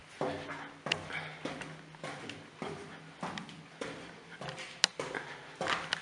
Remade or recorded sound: recorded